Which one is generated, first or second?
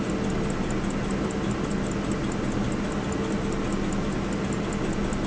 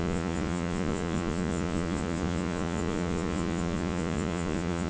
second